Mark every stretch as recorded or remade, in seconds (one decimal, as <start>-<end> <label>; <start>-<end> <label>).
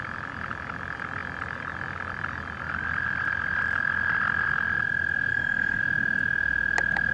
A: 0.0-5.3 recorded; 5.3-5.8 remade; 5.8-7.1 recorded